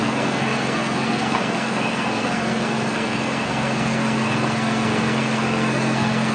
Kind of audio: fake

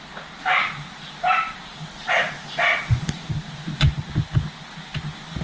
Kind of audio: real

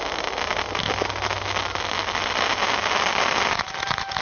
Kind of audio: real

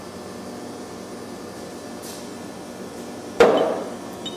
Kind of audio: fake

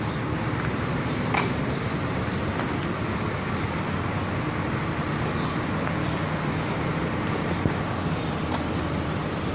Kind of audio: real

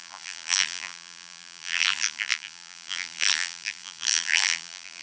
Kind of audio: fake